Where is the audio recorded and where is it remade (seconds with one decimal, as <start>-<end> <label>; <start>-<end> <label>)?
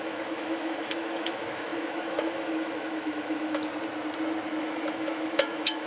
0.0-3.7 remade; 3.7-4.6 recorded; 4.6-5.9 remade